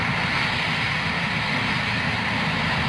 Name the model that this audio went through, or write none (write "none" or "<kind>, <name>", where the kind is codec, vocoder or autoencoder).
none